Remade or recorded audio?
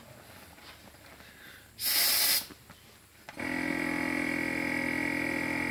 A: recorded